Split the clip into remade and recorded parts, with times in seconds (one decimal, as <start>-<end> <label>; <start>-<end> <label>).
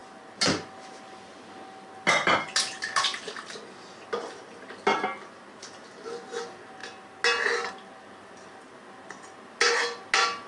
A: 0.0-10.5 recorded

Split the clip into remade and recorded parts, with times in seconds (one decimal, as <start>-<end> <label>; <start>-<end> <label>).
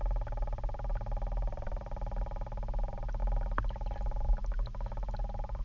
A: 0.0-5.6 recorded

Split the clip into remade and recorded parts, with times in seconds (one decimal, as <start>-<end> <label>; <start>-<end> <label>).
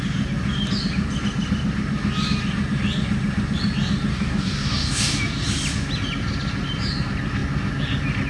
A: 0.0-4.1 recorded; 4.1-5.2 remade; 5.2-8.3 recorded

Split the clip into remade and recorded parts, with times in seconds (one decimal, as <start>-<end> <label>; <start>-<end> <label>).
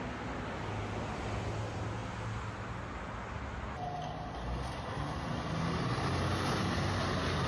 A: 0.0-7.5 recorded